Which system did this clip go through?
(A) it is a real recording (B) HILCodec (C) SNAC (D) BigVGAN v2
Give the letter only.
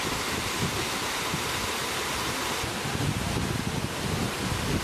A